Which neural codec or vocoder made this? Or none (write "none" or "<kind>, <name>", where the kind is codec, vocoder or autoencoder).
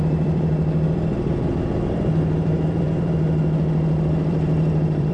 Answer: vocoder, BigVGAN v2